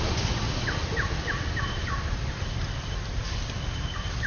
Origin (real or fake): real